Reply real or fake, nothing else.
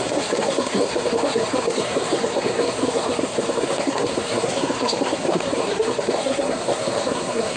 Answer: fake